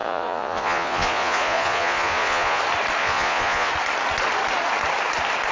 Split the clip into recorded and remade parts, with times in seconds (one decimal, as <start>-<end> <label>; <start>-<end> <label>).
0.0-2.6 remade; 2.6-3.0 recorded; 3.0-3.7 remade; 3.7-5.5 recorded